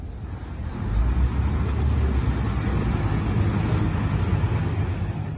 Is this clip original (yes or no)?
yes